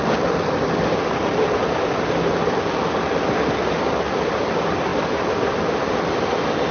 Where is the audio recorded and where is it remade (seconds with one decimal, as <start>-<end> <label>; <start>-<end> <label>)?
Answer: 0.0-6.7 recorded